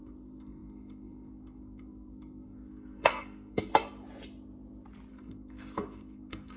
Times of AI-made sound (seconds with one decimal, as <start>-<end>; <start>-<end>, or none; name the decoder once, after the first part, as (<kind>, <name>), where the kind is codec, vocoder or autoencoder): 0.0-3.7 (codec, SNAC); 5.1-6.6